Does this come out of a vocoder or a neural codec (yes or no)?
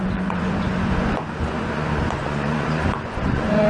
yes